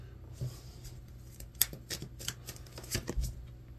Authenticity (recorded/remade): recorded